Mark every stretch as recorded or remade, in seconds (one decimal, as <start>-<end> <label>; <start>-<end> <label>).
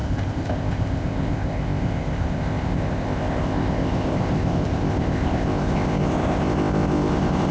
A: 0.0-7.5 remade